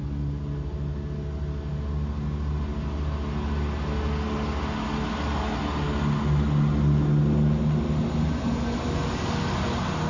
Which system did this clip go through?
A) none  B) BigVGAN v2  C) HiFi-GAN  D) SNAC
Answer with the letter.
A